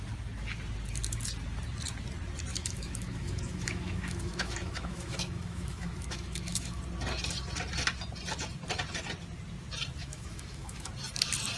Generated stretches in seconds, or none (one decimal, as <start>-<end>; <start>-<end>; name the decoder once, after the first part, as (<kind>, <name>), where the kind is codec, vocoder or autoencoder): 2.5-6.8 (autoencoder, DAC-VAE); 10.0-10.9